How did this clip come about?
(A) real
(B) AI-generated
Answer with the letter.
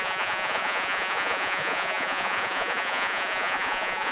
B